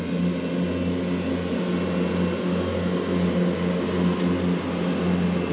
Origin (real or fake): real